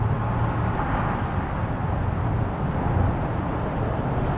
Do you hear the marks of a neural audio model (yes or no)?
no